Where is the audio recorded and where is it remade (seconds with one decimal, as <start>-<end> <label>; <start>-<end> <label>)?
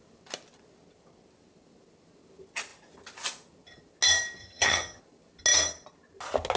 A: 0.0-4.4 recorded; 4.4-5.0 remade; 5.0-6.6 recorded